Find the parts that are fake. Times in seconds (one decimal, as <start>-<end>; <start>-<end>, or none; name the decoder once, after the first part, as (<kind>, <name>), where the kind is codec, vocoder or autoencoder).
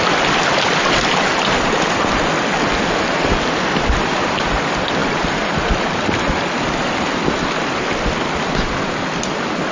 5.0-5.8 (vocoder, BigVGAN v2)